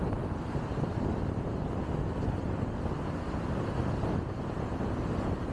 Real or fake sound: real